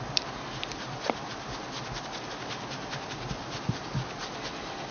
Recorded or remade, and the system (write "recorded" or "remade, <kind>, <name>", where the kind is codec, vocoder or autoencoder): recorded